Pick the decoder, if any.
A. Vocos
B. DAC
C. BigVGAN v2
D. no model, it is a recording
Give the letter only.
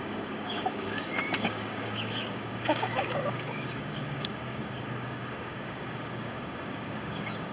B